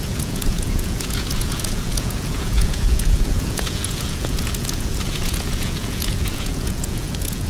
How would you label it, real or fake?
fake